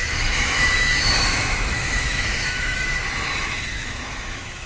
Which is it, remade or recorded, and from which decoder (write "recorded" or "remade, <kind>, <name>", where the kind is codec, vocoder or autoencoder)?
remade, autoencoder, DAC-VAE